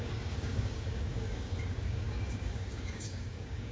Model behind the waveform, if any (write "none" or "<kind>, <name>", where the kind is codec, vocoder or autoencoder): codec, DAC